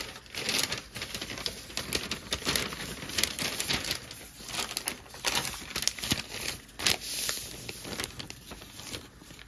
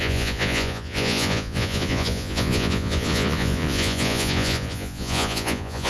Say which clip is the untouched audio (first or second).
first